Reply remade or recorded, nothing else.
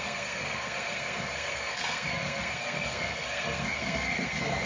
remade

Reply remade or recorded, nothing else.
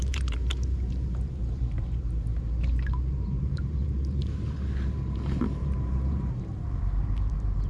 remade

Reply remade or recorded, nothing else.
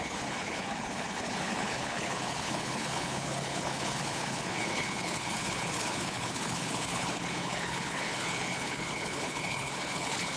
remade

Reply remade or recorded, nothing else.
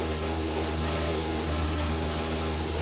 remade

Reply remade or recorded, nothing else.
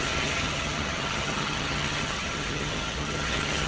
remade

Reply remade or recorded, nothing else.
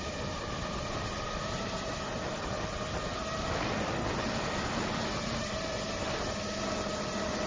recorded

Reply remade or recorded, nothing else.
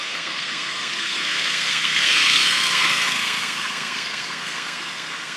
remade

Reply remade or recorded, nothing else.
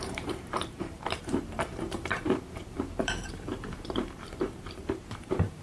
remade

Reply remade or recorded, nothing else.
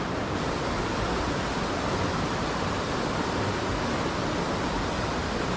recorded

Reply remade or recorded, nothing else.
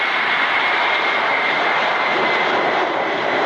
remade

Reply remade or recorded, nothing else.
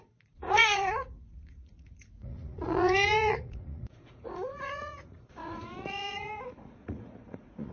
remade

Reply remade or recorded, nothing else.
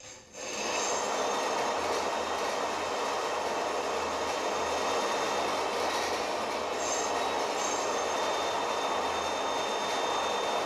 recorded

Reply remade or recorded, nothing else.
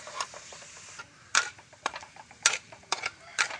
remade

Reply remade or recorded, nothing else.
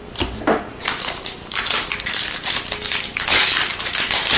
recorded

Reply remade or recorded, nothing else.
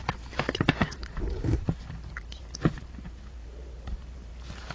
remade